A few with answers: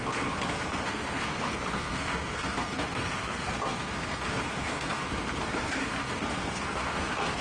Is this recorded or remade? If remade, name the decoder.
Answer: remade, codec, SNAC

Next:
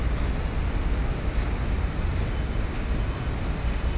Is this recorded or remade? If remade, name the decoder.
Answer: recorded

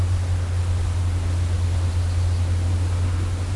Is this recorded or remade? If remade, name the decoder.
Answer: recorded